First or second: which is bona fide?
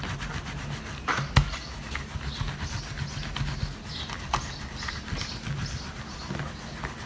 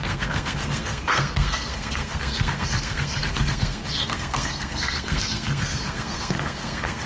first